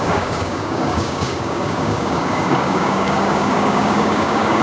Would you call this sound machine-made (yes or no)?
yes